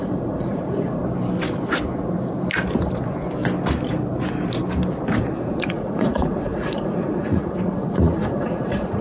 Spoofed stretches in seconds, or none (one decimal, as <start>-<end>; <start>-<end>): 0.0-1.0; 5.4-9.0